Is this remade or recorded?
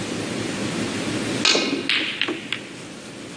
recorded